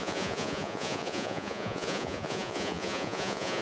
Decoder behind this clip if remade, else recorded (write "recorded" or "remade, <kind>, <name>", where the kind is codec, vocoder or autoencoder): remade, vocoder, Vocos